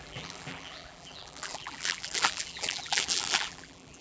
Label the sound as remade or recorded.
remade